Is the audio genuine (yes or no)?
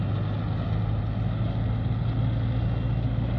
yes